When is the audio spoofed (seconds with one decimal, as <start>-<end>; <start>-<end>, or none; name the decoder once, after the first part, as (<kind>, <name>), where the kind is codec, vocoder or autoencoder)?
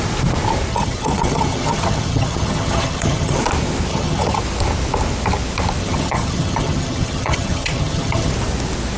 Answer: 0.7-3.4 (vocoder, HiFi-GAN); 3.9-4.4; 5.8-8.3